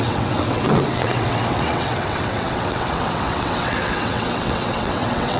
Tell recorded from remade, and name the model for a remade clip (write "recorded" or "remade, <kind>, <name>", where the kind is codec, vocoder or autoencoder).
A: remade, vocoder, WaveNeXt